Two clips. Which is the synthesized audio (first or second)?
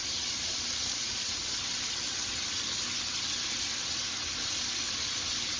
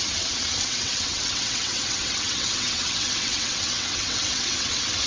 second